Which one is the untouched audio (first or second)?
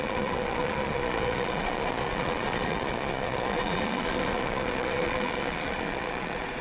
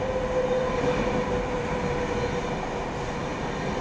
second